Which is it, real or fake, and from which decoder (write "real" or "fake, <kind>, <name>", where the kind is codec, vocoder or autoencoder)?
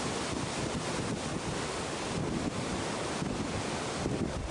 fake, vocoder, BigVGAN v2